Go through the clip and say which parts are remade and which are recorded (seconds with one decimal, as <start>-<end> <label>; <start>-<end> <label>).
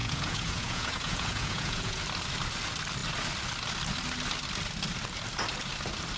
0.0-2.0 remade; 2.0-6.2 recorded